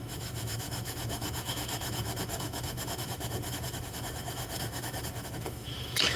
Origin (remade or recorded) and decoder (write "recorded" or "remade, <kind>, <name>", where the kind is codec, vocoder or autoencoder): remade, autoencoder, DAC-VAE